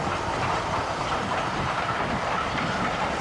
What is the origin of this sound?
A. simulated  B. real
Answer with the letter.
B